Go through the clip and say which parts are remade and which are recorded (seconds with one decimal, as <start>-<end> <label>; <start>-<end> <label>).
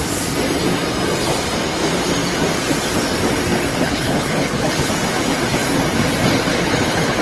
0.0-3.7 recorded; 3.7-4.9 remade; 4.9-6.5 recorded; 6.5-7.2 remade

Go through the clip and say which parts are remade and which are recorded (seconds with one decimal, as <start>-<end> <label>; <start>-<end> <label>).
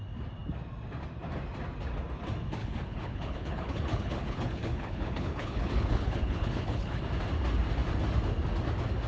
0.0-2.6 recorded; 2.6-7.0 remade; 7.0-9.1 recorded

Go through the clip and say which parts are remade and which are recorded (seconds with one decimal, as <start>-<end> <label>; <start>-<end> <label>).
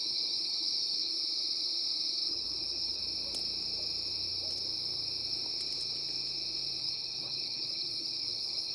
0.0-1.2 remade; 1.2-2.3 recorded; 2.3-3.0 remade; 3.0-6.8 recorded; 6.8-8.7 remade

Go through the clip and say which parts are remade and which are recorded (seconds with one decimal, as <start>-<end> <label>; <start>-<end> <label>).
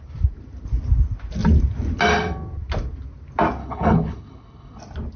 0.0-3.6 recorded; 3.6-4.8 remade; 4.8-5.2 recorded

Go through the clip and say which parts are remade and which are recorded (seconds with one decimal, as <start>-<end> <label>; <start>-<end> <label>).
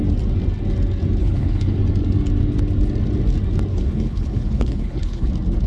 0.0-1.2 recorded; 1.2-1.8 remade; 1.8-3.7 recorded; 3.7-5.3 remade; 5.3-5.7 recorded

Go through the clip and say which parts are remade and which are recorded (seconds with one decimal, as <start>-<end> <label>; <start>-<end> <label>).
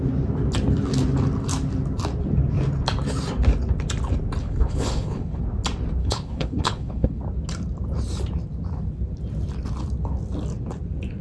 0.0-4.4 recorded; 4.4-5.4 remade; 5.4-6.0 recorded; 6.0-7.2 remade; 7.2-11.2 recorded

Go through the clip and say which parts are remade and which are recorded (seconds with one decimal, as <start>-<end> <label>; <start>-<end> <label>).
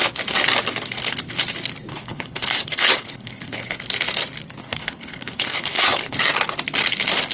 0.0-1.9 recorded; 1.9-3.8 remade; 3.8-4.6 recorded; 4.6-6.2 remade; 6.2-7.3 recorded